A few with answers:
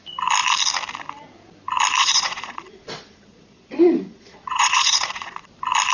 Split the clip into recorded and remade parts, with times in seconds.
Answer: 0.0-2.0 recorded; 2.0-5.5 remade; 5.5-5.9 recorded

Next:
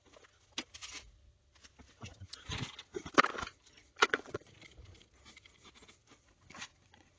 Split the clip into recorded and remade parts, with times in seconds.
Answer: 0.0-3.8 recorded; 3.8-4.5 remade; 4.5-6.1 recorded; 6.1-7.2 remade

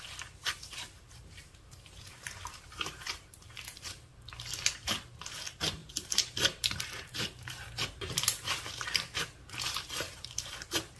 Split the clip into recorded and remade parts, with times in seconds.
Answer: 0.0-4.1 remade; 4.1-4.7 recorded; 4.7-11.0 remade

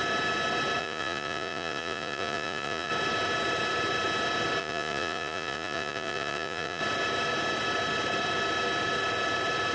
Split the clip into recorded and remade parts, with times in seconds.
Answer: 0.0-0.8 recorded; 0.8-2.9 remade; 2.9-4.6 recorded; 4.6-6.8 remade; 6.8-9.7 recorded

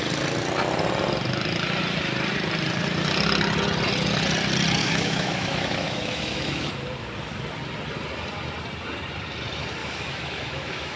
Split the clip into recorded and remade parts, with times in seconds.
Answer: 0.0-4.8 recorded; 4.8-6.7 remade; 6.7-9.8 recorded; 9.8-11.0 remade

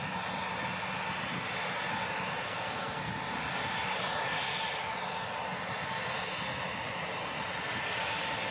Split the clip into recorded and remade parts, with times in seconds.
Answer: 0.0-2.4 recorded; 2.4-3.1 remade; 3.1-8.5 recorded

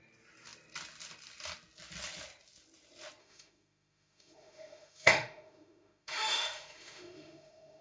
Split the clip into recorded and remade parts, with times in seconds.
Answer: 0.0-3.2 recorded; 3.2-7.8 remade

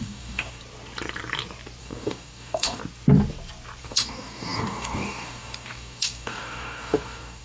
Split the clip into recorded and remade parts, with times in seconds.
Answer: 0.0-0.6 remade; 0.6-1.8 recorded; 1.8-2.8 remade; 2.8-3.8 recorded; 3.8-7.4 remade